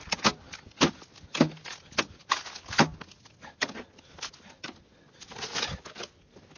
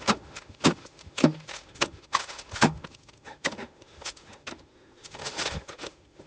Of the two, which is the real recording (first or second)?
first